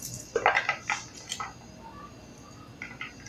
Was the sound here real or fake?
real